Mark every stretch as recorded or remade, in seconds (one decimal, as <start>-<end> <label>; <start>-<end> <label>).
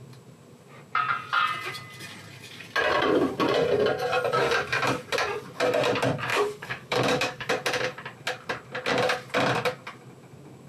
0.0-6.3 recorded; 6.3-7.5 remade; 7.5-10.7 recorded